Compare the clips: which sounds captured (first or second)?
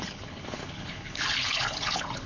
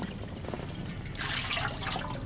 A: second